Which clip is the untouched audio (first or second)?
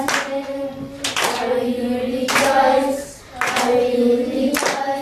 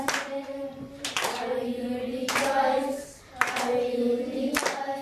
first